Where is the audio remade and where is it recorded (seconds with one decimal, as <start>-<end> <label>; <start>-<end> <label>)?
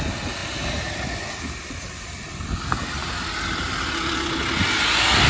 0.0-5.3 recorded